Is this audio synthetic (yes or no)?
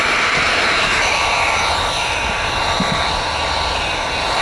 yes